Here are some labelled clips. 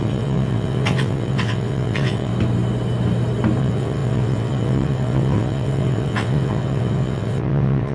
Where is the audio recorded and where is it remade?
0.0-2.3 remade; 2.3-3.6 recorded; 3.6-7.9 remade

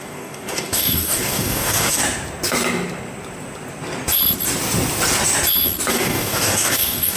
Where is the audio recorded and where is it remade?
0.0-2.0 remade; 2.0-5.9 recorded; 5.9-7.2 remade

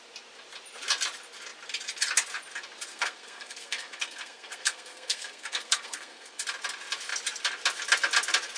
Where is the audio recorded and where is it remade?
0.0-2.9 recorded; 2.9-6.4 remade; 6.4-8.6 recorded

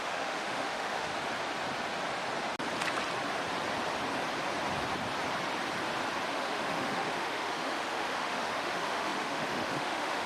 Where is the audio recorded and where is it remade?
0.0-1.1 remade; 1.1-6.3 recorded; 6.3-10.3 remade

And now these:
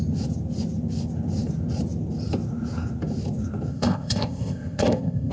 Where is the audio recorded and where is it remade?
0.0-3.7 recorded; 3.7-5.3 remade

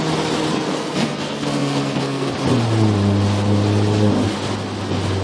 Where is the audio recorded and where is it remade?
0.0-0.5 recorded; 0.5-2.3 remade; 2.3-5.2 recorded